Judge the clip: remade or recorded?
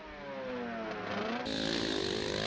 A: recorded